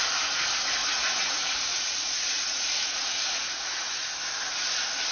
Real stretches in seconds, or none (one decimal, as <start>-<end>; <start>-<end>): 0.0-0.8; 3.9-5.1